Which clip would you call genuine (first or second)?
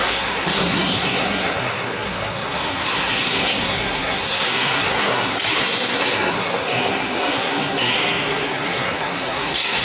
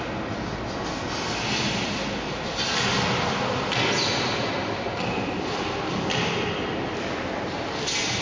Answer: second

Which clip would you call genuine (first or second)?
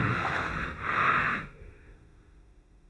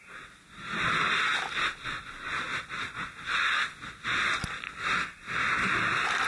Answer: second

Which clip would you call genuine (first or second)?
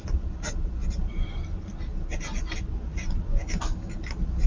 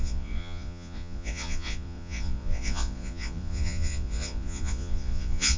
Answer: first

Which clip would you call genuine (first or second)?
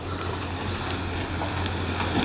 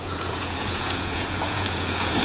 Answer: first